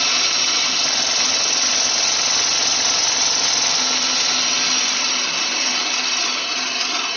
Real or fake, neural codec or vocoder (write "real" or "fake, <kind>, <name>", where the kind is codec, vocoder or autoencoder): real